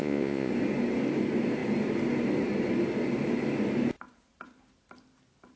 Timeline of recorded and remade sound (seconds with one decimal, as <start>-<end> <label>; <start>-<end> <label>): 0.0-0.5 remade; 0.5-5.6 recorded